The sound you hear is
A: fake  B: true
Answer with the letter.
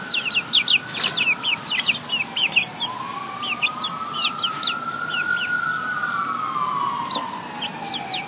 B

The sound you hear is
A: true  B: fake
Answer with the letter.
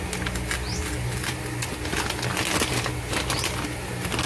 A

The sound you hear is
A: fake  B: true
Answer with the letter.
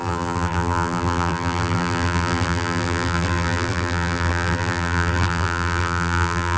A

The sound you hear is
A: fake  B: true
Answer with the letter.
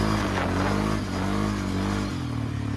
B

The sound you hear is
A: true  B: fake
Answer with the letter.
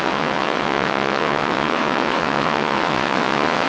B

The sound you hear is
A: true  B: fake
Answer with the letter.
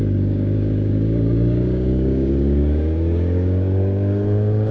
B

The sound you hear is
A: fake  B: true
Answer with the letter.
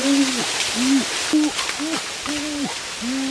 B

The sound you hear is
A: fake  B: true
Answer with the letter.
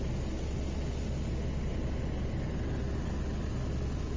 B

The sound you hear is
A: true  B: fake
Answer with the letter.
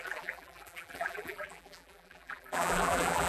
B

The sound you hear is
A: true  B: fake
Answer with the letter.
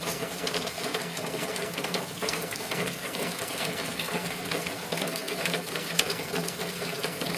B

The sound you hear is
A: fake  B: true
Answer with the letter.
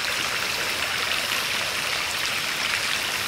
B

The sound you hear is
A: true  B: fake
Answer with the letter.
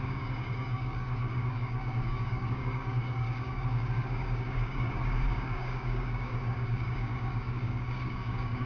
B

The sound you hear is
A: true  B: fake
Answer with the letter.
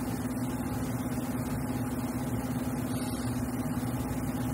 A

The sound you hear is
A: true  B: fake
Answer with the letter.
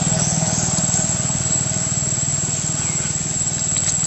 A